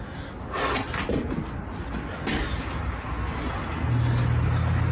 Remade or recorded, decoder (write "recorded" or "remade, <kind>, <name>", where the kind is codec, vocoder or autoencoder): recorded